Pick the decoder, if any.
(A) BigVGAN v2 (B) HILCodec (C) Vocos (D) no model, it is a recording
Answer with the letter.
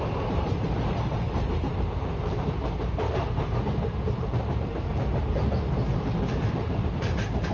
A